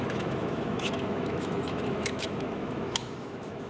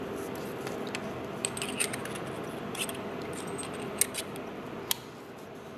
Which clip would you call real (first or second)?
second